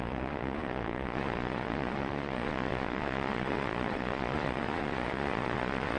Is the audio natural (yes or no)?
no